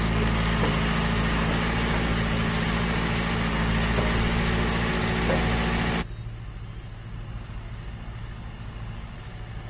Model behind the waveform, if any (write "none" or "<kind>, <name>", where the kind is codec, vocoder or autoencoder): none